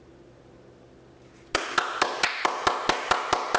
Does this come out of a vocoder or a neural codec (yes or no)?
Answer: no